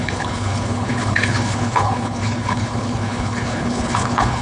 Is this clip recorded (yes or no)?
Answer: no